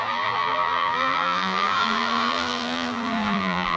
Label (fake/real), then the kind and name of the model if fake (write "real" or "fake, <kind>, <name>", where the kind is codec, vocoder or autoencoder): fake, vocoder, BigVGAN v2